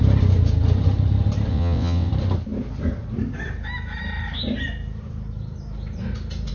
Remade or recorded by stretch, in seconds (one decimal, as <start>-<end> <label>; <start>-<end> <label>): 0.0-1.5 recorded; 1.5-2.1 remade; 2.1-6.5 recorded